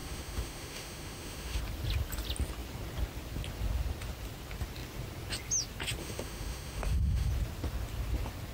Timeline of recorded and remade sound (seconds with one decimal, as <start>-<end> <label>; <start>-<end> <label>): 0.0-1.6 remade; 1.6-6.0 recorded; 6.0-7.3 remade; 7.3-8.5 recorded